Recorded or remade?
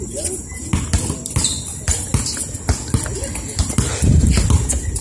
recorded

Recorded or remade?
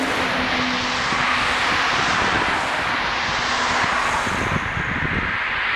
recorded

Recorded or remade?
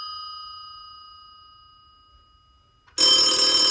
recorded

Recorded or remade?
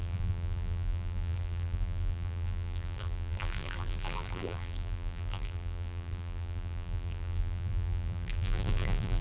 remade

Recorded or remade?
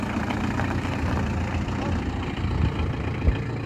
remade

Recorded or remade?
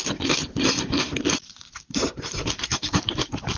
recorded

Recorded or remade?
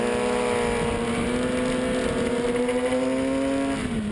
recorded